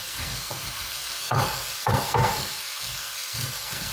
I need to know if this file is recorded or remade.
remade